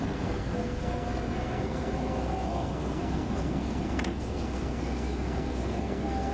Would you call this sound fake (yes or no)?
yes